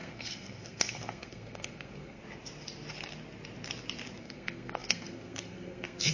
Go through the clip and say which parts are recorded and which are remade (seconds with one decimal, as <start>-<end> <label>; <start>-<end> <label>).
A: 0.0-2.2 remade; 2.2-4.2 recorded; 4.2-6.1 remade